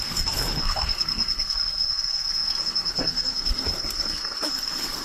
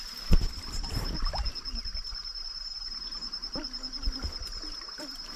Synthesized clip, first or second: first